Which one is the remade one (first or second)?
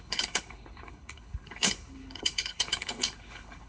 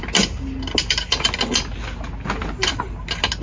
first